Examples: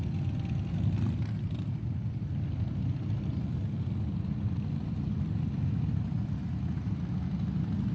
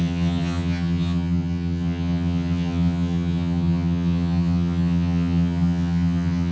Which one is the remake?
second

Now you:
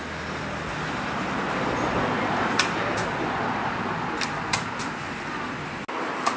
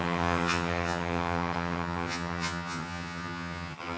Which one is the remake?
second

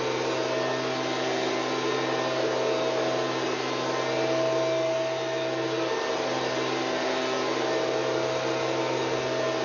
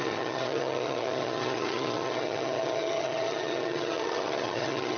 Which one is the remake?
second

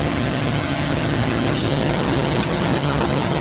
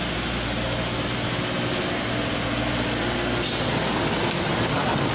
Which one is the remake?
first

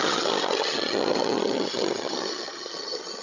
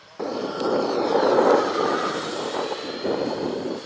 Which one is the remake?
first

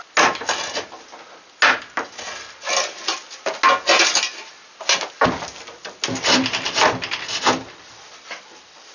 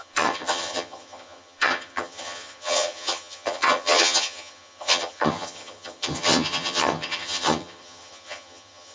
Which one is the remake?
second